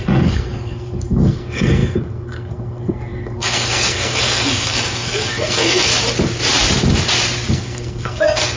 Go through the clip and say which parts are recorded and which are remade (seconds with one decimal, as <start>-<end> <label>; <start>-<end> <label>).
0.0-5.9 remade; 5.9-7.5 recorded; 7.5-8.6 remade

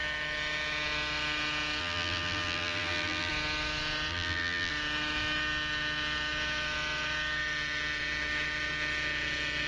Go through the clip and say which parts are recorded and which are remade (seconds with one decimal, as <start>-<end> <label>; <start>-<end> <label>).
0.0-1.8 recorded; 1.8-3.3 remade; 3.3-4.1 recorded; 4.1-4.7 remade; 4.7-9.7 recorded

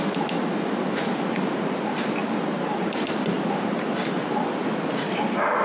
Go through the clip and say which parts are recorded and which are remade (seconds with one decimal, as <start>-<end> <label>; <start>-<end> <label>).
0.0-5.6 recorded

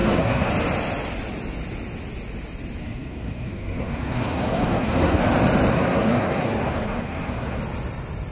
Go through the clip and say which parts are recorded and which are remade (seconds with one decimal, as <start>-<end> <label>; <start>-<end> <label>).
0.0-0.5 remade; 0.5-2.8 recorded; 2.8-5.2 remade; 5.2-5.7 recorded; 5.7-7.6 remade; 7.6-8.3 recorded

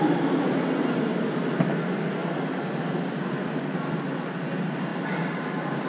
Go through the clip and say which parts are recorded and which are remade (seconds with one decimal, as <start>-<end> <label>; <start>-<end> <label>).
0.0-5.9 recorded